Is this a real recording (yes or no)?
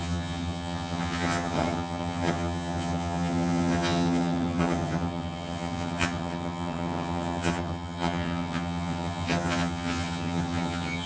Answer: no